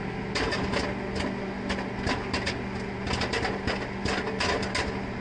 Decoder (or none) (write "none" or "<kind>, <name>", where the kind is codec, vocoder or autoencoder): none